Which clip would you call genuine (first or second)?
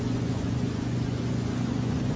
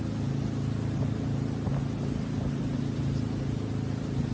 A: second